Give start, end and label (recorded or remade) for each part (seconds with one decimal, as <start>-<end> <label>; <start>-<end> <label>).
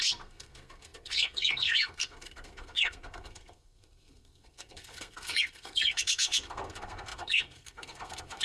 0.0-8.4 remade